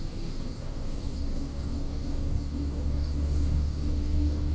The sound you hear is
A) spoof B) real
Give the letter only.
A